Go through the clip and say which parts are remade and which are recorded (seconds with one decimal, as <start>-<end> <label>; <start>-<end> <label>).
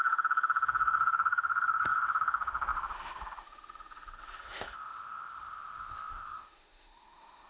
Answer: 0.0-7.5 remade